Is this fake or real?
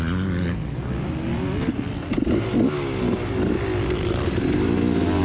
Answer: real